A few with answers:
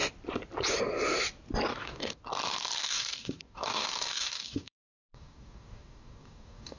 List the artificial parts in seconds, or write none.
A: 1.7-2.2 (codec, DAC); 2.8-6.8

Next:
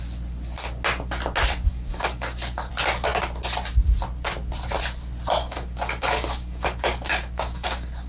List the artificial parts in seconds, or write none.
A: 1.7-2.7 (codec, DAC); 5.4-8.1

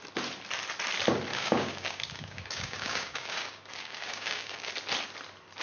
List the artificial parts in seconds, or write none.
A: 1.3-4.7 (codec, DAC)